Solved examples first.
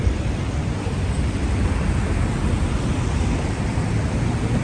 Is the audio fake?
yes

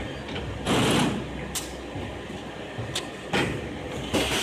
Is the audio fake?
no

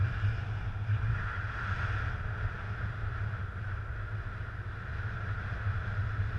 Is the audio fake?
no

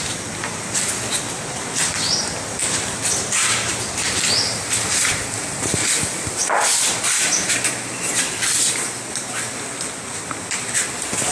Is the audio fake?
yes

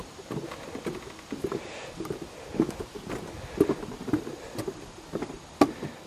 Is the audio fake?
no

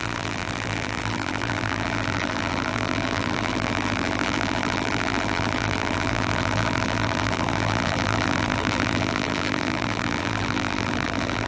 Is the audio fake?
yes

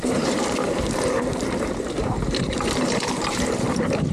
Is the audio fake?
yes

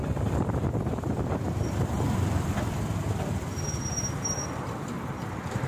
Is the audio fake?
yes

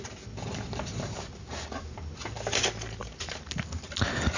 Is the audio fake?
no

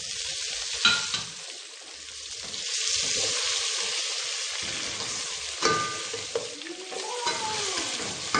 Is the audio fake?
no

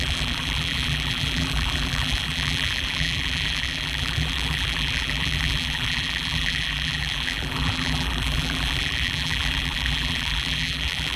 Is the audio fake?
yes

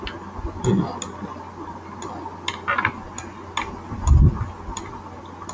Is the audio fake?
no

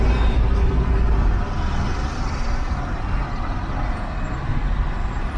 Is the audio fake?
no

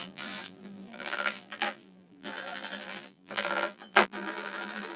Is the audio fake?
yes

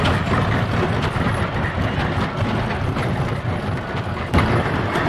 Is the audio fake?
no